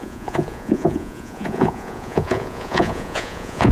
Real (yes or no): no